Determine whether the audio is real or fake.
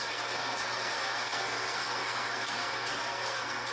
fake